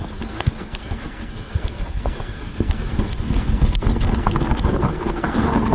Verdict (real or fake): fake